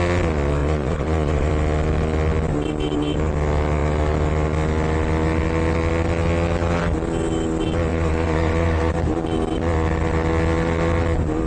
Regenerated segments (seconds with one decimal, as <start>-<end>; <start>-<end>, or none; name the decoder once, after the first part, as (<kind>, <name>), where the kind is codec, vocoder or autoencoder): 0.6-1.5 (vocoder, Vocos); 7.9-8.9